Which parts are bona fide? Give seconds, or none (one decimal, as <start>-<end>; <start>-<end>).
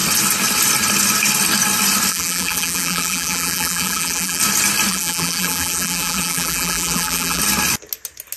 0.0-2.1; 4.4-4.9; 7.4-8.4